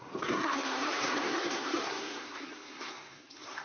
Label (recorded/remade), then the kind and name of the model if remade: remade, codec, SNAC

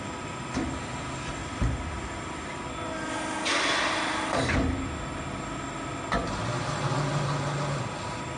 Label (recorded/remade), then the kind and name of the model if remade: recorded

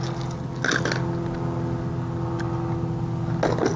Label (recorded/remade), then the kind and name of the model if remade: recorded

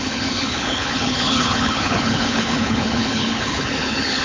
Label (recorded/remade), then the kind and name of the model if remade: remade, codec, HILCodec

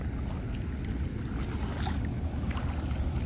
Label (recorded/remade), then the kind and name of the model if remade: recorded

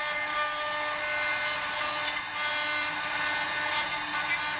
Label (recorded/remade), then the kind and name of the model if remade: recorded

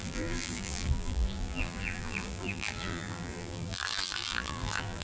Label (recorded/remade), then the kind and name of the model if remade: remade, vocoder, BigVGAN v2